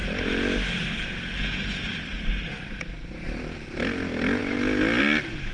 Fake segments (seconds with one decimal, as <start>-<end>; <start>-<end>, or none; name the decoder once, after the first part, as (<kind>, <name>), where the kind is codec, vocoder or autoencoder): none